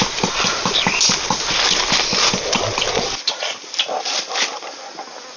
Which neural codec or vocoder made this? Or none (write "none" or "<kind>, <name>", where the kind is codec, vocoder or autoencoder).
none